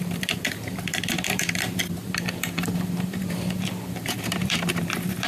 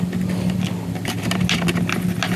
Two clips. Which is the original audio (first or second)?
second